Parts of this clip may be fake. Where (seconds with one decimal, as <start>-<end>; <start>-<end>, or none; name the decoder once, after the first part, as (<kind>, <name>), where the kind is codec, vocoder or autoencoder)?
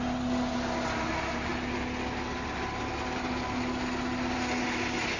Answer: none